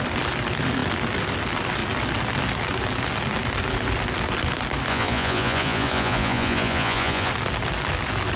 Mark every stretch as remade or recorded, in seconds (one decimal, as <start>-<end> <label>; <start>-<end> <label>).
0.0-4.9 recorded; 4.9-7.3 remade; 7.3-8.4 recorded